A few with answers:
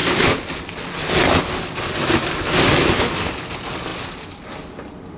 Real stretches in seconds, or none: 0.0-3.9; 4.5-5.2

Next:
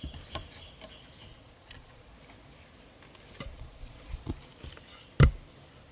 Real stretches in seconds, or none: 0.0-1.3; 2.1-3.5; 4.3-5.9

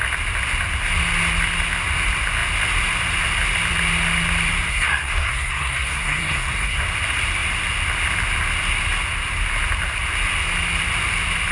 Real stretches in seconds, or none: 0.0-4.7; 6.8-11.5

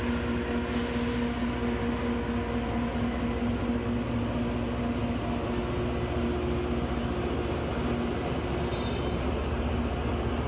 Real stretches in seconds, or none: 0.0-10.5

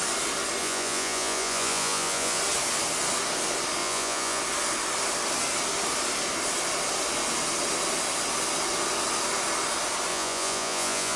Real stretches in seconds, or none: 0.0-0.6; 2.4-3.8; 4.4-10.1